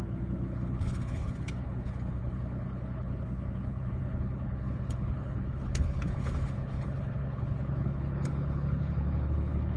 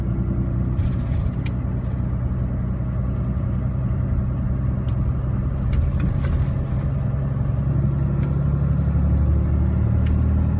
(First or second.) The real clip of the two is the second